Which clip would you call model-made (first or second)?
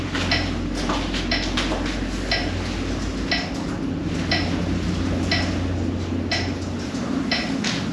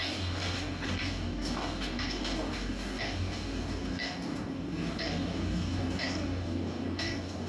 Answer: second